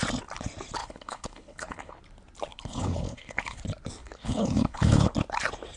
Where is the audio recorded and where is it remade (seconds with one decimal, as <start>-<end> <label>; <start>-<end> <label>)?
0.0-0.8 recorded; 0.8-2.0 remade; 2.0-2.5 recorded; 2.5-3.6 remade; 3.6-4.0 recorded; 4.0-5.1 remade; 5.1-5.8 recorded